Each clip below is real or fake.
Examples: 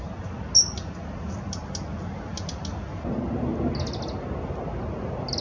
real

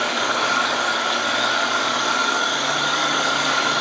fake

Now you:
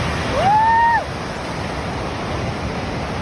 real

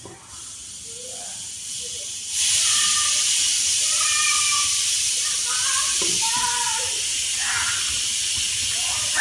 real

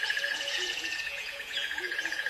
fake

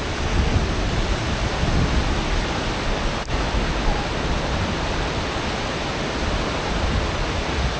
real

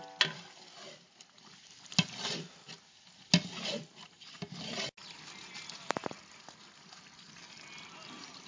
real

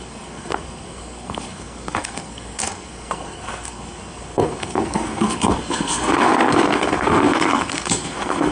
fake